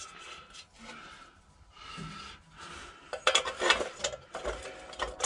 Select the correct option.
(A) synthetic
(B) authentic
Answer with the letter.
B